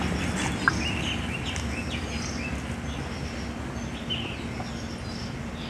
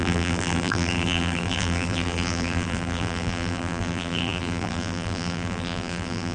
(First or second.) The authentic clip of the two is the first